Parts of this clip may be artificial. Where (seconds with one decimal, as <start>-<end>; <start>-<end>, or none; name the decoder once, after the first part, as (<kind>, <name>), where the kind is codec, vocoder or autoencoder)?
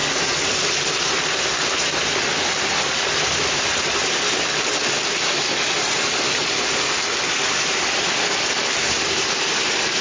none